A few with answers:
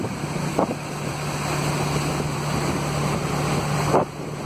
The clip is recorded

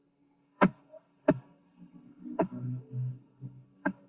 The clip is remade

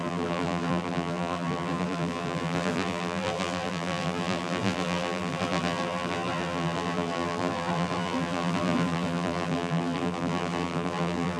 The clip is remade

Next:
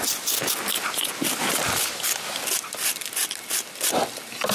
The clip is recorded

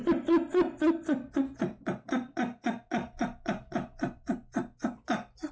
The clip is recorded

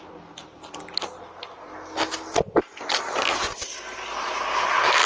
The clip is recorded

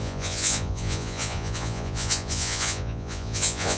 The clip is remade